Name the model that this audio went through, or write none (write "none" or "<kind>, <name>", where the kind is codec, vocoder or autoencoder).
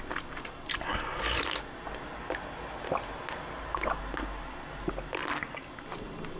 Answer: none